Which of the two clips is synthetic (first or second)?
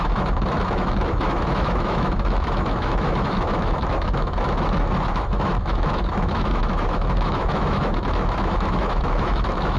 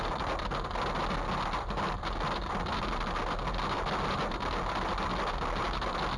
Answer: first